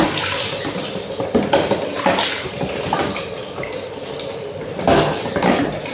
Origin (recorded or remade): recorded